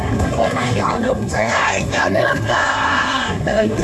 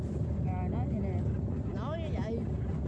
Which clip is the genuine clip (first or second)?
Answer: second